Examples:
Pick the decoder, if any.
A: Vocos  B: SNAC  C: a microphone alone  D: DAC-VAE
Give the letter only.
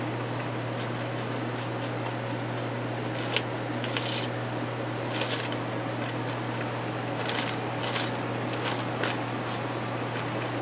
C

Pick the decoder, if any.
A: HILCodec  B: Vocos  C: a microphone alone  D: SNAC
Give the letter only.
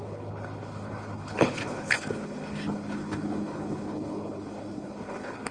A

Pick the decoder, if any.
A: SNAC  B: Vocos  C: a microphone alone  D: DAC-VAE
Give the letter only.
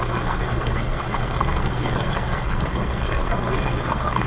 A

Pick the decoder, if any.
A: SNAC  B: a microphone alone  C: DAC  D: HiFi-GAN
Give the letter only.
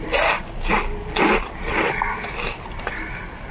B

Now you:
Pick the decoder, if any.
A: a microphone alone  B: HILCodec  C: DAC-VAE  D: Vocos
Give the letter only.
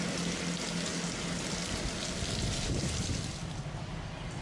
A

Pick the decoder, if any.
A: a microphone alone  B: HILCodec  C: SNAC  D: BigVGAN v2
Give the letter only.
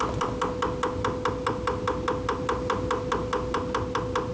A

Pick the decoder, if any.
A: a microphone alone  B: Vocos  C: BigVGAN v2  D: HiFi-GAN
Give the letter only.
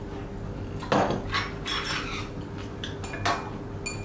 A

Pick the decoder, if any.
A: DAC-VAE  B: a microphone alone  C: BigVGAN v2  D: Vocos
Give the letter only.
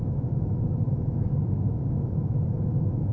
A